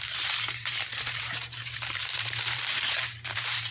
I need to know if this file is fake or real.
fake